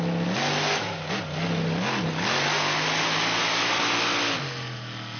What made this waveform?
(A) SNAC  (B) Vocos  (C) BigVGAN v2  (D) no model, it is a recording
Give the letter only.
D